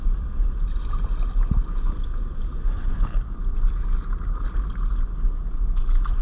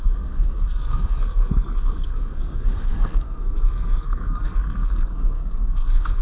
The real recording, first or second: first